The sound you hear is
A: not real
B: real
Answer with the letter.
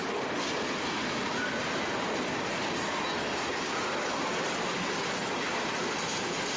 B